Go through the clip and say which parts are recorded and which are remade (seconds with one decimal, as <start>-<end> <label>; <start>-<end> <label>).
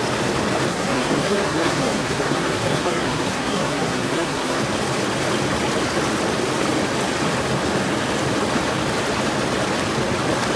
0.0-0.7 recorded; 0.7-4.6 remade; 4.6-10.6 recorded